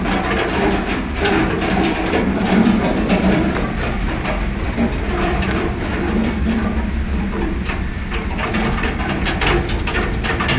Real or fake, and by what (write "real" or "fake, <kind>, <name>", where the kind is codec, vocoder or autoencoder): fake, vocoder, BigVGAN v2